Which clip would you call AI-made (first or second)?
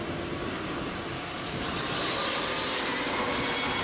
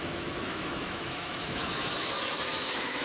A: second